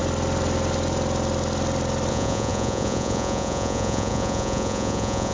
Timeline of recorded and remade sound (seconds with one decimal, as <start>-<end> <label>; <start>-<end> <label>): 0.0-2.1 recorded; 2.1-5.3 remade